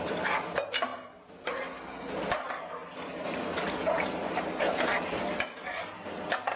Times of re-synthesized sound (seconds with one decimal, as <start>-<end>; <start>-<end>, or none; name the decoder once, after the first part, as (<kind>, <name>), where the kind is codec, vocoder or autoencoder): none